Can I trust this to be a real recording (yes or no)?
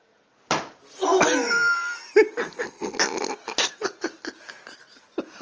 yes